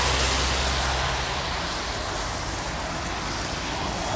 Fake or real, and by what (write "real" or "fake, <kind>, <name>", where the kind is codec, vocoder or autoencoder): real